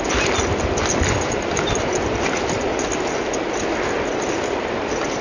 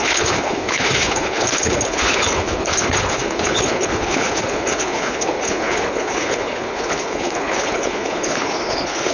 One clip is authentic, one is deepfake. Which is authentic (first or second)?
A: first